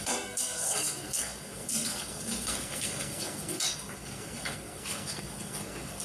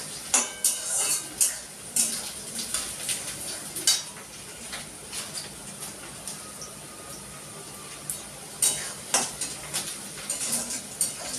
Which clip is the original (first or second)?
second